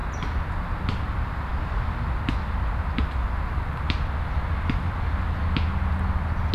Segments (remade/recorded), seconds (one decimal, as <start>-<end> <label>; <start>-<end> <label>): 0.0-6.5 recorded